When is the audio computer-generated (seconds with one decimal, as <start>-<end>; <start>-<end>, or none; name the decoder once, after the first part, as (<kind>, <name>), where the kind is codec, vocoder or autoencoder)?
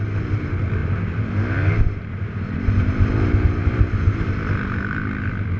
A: none